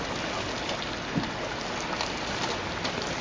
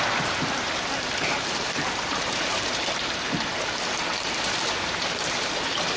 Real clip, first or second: first